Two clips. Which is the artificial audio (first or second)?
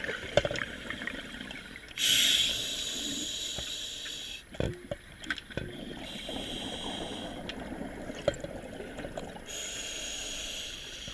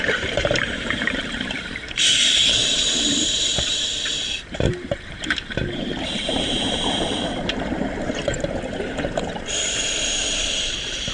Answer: second